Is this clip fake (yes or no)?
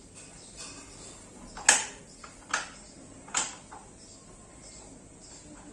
no